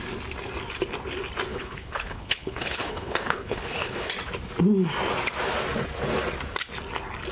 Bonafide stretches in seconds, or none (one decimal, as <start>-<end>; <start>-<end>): 0.0-1.5; 4.1-7.3